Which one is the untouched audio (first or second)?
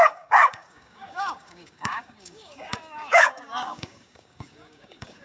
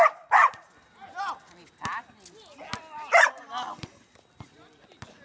second